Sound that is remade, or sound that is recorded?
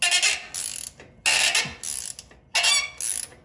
recorded